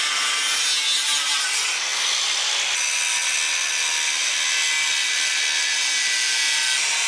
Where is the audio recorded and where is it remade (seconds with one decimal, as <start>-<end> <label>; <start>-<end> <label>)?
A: 0.0-7.1 recorded